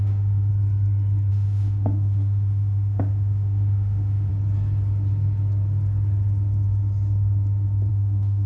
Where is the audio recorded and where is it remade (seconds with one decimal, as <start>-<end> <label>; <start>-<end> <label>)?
0.0-0.5 remade; 0.5-1.3 recorded; 1.3-4.3 remade; 4.3-7.9 recorded; 7.9-8.5 remade